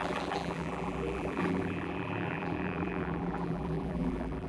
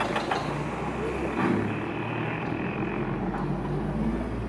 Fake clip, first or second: first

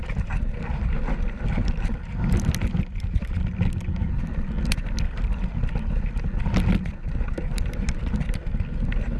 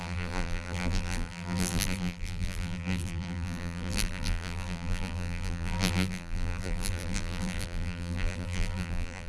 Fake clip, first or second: second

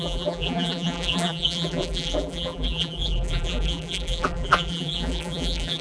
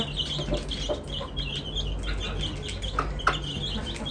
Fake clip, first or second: first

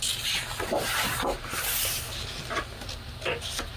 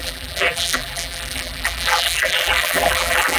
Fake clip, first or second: second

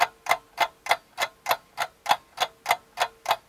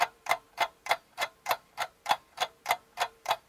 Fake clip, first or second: second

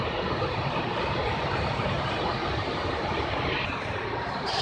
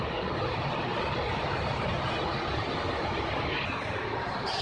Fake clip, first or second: first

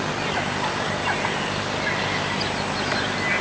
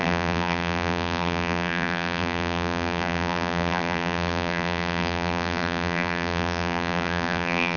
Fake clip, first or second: second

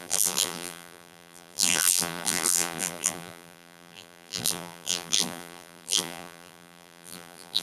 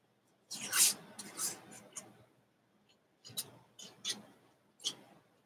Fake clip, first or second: first